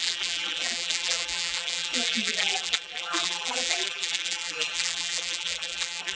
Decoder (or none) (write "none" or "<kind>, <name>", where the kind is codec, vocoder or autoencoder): vocoder, BigVGAN v2